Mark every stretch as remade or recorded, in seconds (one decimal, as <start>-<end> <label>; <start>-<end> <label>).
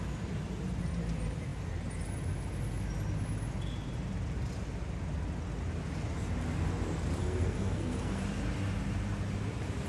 0.0-7.2 recorded; 7.2-8.2 remade; 8.2-9.9 recorded